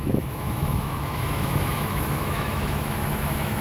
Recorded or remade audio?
remade